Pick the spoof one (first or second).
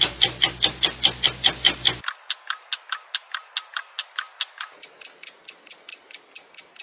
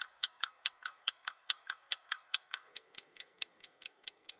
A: second